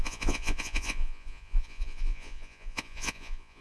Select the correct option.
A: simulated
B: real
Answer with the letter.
A